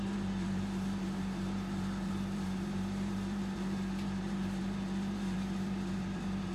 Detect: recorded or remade remade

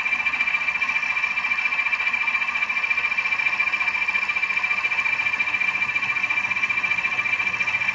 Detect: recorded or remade recorded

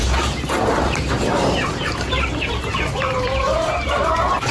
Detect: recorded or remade remade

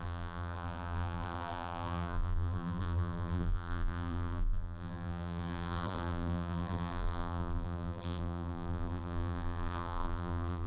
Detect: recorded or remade remade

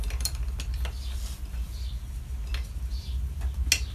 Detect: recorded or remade recorded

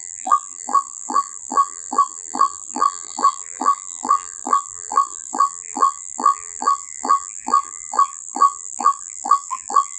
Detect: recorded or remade remade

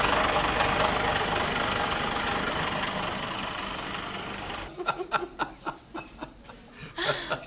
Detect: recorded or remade remade